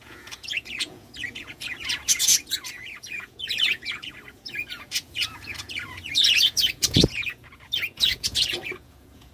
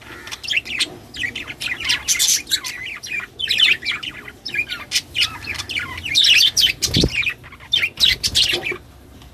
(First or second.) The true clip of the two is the second